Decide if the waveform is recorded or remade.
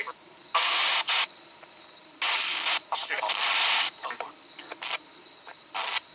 recorded